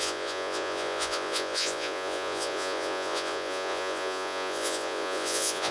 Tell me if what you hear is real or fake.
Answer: fake